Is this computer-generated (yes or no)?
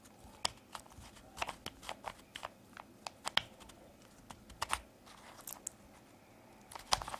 no